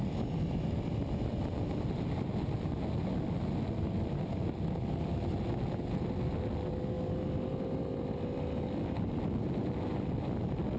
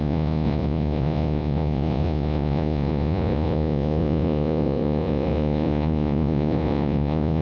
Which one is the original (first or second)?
first